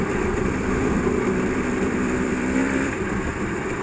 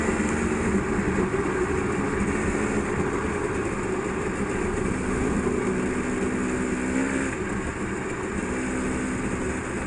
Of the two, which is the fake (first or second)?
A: first